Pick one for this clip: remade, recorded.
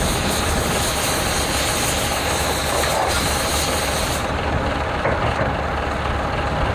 recorded